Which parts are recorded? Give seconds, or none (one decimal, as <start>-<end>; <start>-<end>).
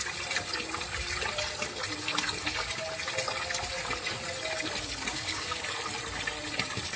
0.0-5.1; 5.6-7.0